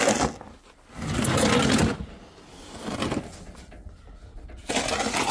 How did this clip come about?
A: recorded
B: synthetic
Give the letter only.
A